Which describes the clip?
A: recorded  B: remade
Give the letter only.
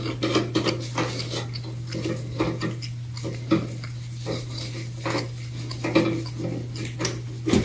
A